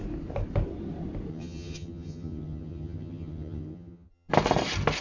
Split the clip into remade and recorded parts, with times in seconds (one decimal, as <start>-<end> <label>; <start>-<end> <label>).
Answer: 0.0-1.3 recorded; 1.3-4.3 remade; 4.3-5.0 recorded